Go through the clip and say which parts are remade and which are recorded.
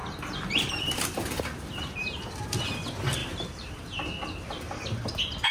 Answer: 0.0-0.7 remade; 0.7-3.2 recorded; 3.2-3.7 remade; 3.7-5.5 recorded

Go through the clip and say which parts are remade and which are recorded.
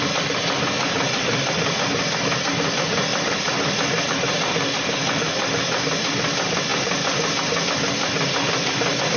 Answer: 0.0-3.1 recorded; 3.1-4.0 remade; 4.0-9.2 recorded